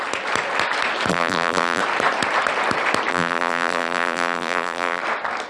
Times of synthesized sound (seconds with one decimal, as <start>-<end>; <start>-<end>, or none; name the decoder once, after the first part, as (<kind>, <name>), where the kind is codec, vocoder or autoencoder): 1.1-1.8 (vocoder, BigVGAN v2); 3.1-5.0